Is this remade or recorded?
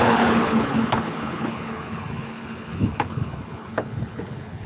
remade